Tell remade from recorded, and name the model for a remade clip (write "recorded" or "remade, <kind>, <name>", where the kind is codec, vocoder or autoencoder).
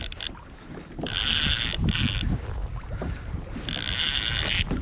recorded